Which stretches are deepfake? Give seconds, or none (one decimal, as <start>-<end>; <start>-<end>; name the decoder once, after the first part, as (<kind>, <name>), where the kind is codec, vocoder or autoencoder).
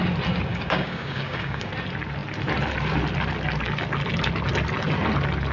0.5-1.7 (codec, DAC)